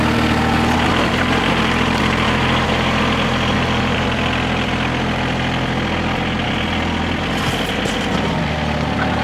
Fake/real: real